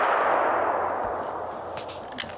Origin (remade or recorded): recorded